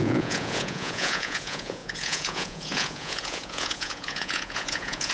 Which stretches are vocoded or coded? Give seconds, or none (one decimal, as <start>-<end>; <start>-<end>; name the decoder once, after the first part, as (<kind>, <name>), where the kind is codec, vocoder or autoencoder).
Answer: 0.0-5.1 (vocoder, Vocos)